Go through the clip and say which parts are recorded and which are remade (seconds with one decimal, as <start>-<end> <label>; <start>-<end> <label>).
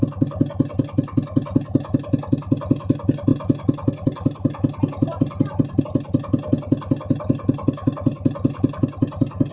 0.0-9.5 recorded